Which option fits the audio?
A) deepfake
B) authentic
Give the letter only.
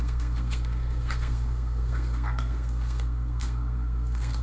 A